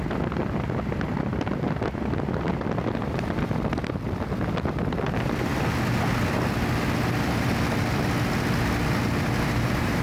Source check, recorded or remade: recorded